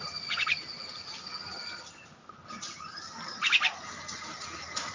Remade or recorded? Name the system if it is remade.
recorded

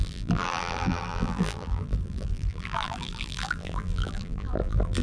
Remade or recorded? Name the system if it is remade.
remade, vocoder, BigVGAN v2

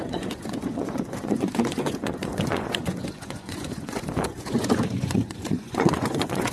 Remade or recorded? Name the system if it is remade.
remade, vocoder, Vocos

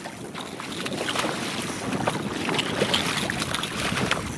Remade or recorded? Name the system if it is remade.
recorded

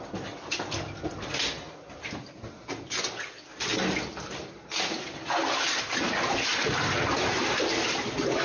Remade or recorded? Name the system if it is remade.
recorded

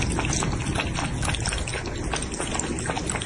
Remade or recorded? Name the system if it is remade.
recorded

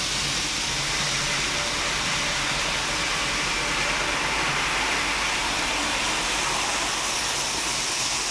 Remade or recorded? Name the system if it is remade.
recorded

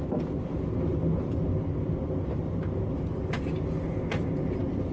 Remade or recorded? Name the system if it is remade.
recorded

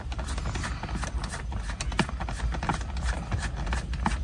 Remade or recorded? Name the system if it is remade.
recorded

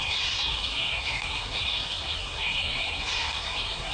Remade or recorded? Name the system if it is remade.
remade, codec, SNAC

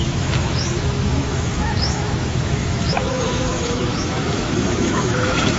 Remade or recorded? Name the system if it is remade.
remade, autoencoder, DAC-VAE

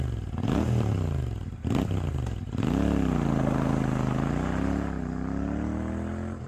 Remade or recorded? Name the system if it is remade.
recorded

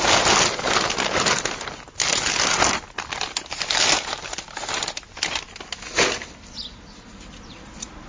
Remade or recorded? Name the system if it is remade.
recorded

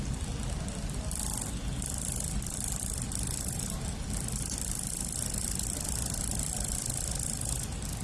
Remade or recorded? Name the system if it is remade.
recorded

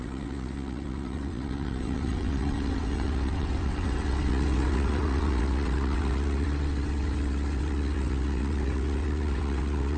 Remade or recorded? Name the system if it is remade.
remade, vocoder, WaveNeXt